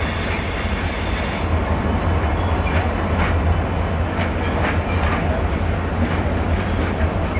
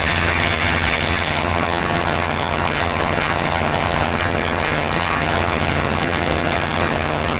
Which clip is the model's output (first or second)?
second